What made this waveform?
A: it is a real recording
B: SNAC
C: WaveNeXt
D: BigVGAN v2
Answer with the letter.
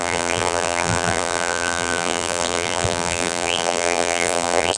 D